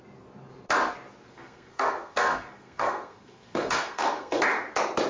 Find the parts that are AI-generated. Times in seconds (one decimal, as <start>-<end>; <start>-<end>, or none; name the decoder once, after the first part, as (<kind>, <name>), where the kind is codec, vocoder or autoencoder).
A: 1.3-4.4 (codec, SNAC)